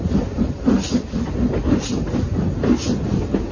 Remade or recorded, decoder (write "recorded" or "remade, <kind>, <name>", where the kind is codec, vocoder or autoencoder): recorded